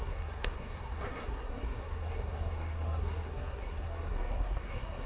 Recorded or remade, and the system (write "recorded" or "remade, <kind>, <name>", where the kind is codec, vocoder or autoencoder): remade, codec, SNAC